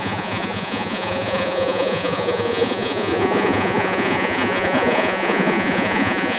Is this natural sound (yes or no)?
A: no